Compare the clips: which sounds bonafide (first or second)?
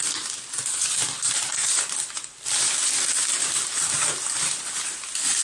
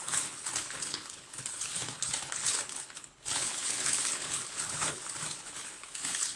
first